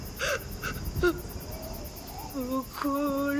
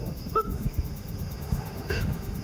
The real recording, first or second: first